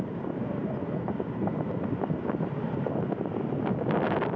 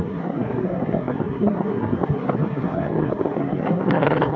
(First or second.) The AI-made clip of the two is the second